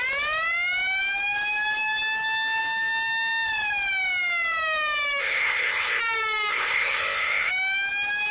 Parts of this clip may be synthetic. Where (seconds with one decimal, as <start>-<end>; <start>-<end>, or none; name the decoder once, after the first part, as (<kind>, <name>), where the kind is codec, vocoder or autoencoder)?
5.2-6.0 (codec, ZipCodec); 6.5-7.5

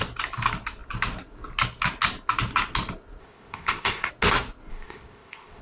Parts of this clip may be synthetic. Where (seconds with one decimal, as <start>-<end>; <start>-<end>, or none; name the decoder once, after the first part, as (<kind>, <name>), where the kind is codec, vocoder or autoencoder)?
3.2-4.1 (codec, ZipCodec); 4.7-5.6